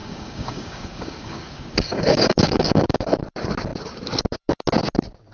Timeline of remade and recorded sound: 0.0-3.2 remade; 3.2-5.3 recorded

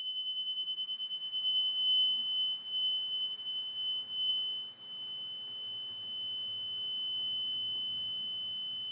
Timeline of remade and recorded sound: 0.0-8.9 recorded

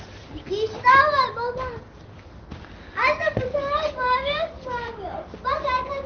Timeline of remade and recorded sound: 0.0-3.2 recorded; 3.2-4.8 remade; 4.8-6.1 recorded

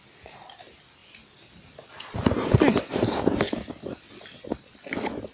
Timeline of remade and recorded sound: 0.0-5.3 recorded

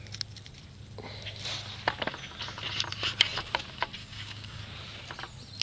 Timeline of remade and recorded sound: 0.0-4.0 recorded; 4.0-4.6 remade; 4.6-5.6 recorded